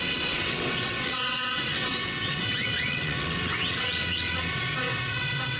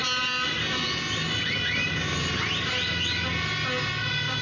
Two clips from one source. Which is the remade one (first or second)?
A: first